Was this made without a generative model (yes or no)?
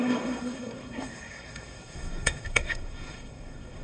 no